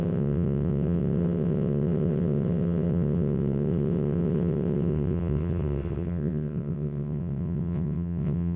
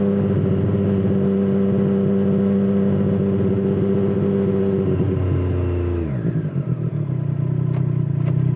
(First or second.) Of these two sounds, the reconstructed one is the first